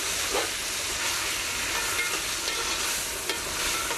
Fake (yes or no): no